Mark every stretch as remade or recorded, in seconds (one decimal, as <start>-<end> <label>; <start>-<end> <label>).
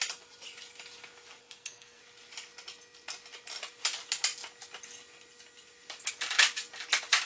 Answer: 0.0-1.4 recorded; 1.4-2.0 remade; 2.0-7.3 recorded